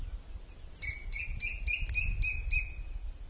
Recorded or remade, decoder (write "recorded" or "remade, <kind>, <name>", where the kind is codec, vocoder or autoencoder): recorded